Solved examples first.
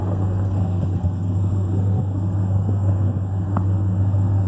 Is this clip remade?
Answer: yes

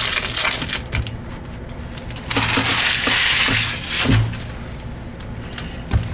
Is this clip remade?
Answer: no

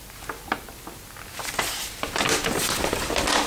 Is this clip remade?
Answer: no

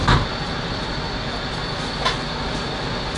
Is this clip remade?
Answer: no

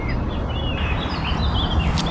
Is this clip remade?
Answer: no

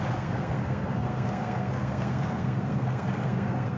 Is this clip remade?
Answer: yes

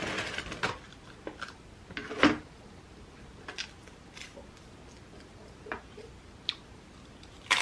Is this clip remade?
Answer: no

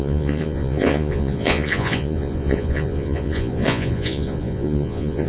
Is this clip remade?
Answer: yes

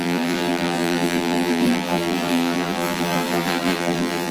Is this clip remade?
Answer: yes